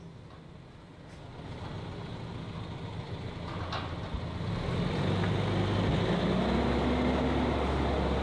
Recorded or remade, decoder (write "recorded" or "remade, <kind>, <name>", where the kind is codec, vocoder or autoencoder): recorded